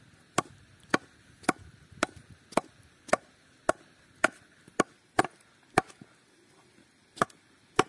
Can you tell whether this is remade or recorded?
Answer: recorded